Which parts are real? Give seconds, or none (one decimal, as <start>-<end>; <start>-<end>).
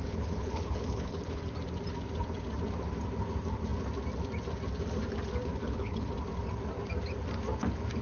1.4-5.5; 6.1-8.0